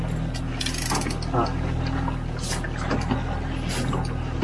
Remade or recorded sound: recorded